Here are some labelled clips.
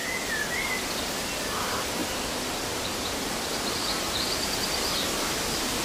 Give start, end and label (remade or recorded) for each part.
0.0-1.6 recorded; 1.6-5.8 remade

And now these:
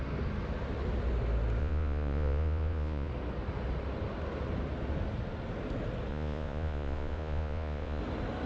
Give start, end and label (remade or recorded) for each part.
0.0-1.6 recorded; 1.6-3.1 remade; 3.1-6.1 recorded; 6.1-8.0 remade; 8.0-8.5 recorded